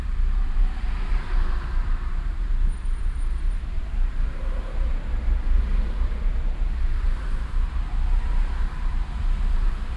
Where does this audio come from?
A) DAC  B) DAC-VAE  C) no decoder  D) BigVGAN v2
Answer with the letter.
D